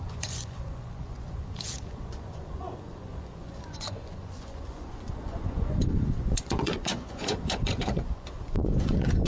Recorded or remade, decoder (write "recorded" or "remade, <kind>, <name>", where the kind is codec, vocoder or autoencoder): remade, vocoder, Vocos